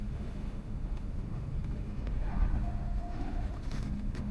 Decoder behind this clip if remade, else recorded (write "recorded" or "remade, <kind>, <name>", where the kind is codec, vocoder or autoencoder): remade, autoencoder, DAC-VAE